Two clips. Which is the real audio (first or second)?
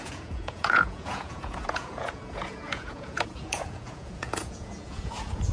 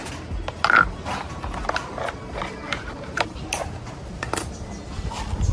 second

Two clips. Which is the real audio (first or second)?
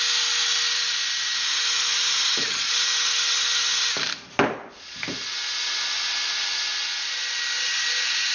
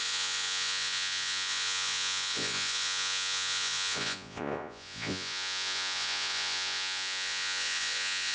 first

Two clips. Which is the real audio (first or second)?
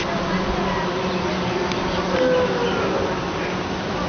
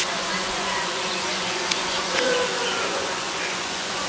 first